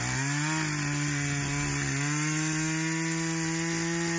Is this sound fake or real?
real